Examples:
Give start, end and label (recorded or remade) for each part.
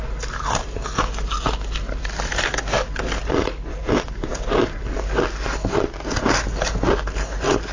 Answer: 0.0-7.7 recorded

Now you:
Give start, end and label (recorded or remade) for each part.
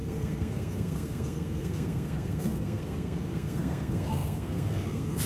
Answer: 0.0-5.3 remade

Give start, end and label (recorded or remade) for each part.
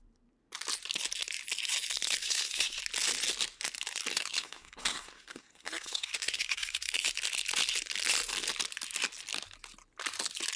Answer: 0.0-2.2 recorded; 2.2-2.8 remade; 2.8-4.1 recorded; 4.1-6.9 remade; 6.9-10.6 recorded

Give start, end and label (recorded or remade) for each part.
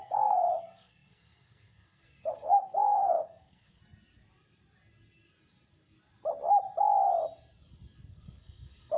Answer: 0.0-3.8 remade; 3.8-8.1 recorded; 8.1-9.0 remade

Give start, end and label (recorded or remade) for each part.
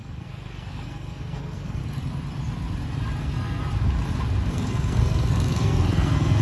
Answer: 0.0-1.8 remade; 1.8-3.2 recorded; 3.2-3.6 remade; 3.6-4.5 recorded; 4.5-6.4 remade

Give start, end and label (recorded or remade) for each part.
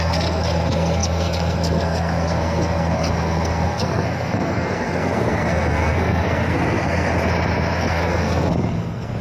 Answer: 0.0-7.1 remade; 7.1-7.8 recorded; 7.8-9.2 remade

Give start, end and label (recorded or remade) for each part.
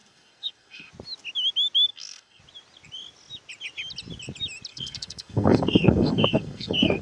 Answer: 0.0-0.9 remade; 0.9-1.9 recorded; 1.9-2.4 remade; 2.4-4.7 recorded; 4.7-7.0 remade